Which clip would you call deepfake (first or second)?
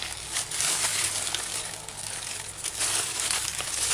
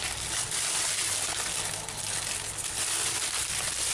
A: first